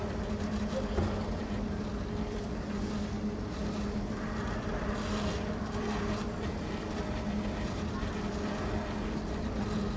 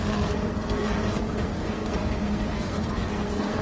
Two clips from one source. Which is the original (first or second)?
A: first